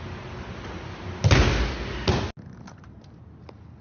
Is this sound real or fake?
real